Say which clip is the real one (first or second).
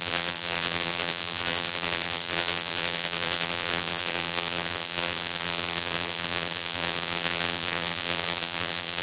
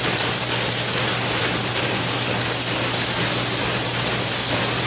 second